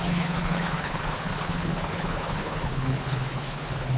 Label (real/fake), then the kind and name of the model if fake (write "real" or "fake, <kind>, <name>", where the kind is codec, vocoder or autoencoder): fake, codec, HILCodec